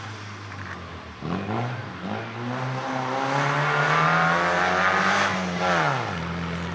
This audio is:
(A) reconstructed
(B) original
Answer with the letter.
B